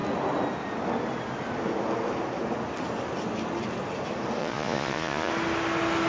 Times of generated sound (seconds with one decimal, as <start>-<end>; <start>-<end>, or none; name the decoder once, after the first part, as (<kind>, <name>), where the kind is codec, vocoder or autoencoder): 4.4-5.3 (vocoder, Vocos)